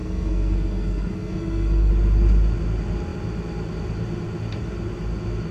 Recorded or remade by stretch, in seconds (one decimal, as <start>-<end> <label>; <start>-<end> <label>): 0.0-1.9 remade; 1.9-5.5 recorded